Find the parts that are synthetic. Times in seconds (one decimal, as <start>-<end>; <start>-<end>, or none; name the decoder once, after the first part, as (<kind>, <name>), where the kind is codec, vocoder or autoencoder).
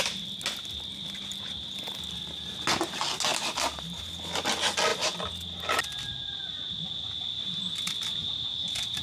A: none